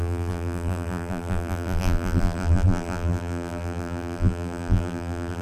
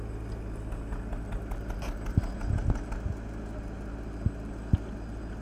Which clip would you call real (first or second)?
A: second